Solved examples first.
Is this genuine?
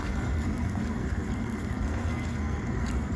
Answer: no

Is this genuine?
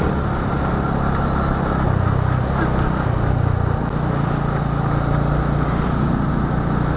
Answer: yes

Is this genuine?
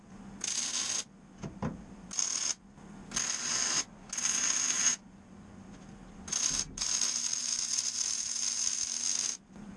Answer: yes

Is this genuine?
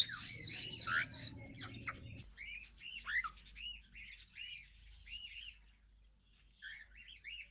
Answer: yes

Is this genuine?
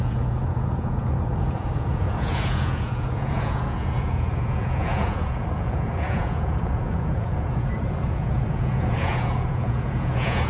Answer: no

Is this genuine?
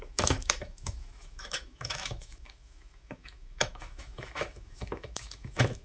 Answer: no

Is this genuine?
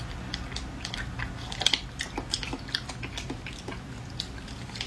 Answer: yes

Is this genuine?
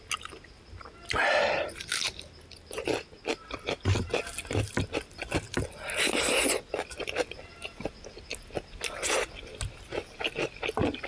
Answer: yes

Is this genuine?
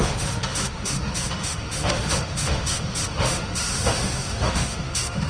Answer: no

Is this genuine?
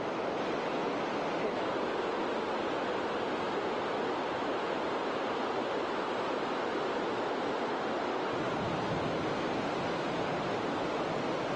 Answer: yes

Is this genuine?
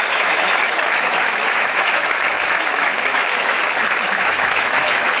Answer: no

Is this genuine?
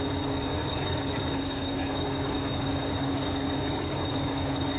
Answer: no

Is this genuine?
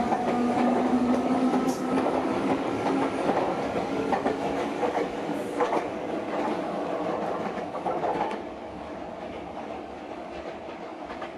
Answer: no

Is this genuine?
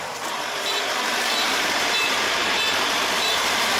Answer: no